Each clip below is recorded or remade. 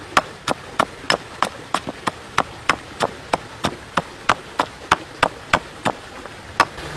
recorded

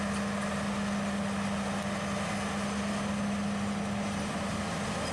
recorded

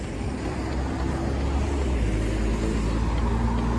recorded